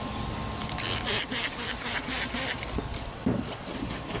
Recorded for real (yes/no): yes